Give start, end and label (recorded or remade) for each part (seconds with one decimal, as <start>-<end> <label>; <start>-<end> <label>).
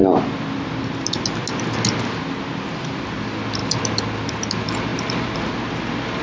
0.0-4.9 recorded; 4.9-5.5 remade; 5.5-6.2 recorded